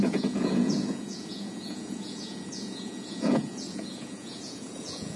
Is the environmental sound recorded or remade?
remade